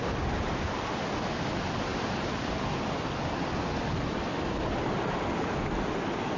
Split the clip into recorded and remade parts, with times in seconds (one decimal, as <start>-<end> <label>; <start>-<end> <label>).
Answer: 0.0-6.4 recorded